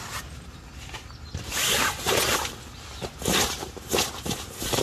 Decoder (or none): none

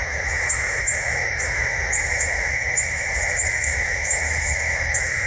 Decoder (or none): autoencoder, DAC-VAE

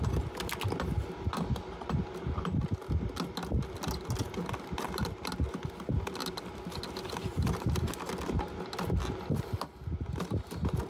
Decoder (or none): none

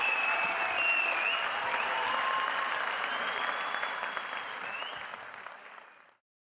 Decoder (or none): none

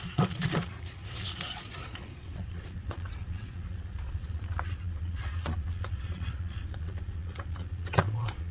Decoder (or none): vocoder, Vocos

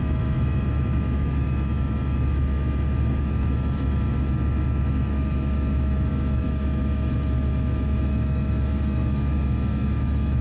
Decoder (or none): autoencoder, DAC-VAE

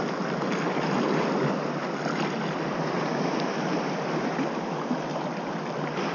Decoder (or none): none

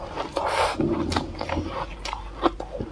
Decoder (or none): none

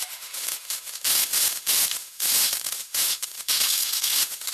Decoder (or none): autoencoder, DAC-VAE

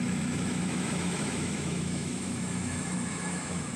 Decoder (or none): autoencoder, DAC-VAE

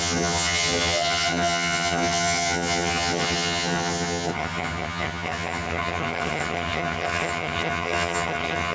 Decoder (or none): vocoder, HiFi-GAN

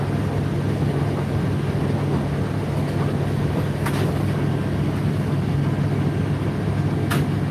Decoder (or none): none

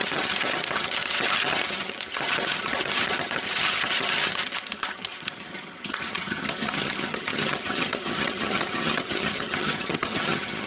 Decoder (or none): vocoder, HiFi-GAN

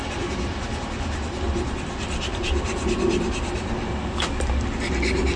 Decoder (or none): none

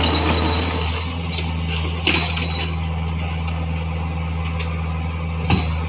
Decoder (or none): none